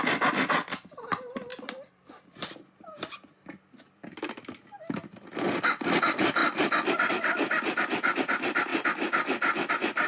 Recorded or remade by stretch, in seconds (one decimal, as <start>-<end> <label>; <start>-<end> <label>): 0.0-10.1 recorded